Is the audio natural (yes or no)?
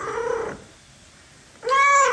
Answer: yes